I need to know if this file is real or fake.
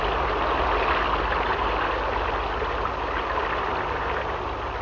real